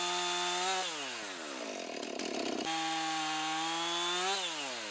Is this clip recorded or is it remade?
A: recorded